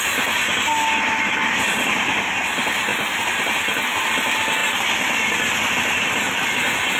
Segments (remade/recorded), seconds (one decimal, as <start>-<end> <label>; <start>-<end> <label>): 0.0-7.0 recorded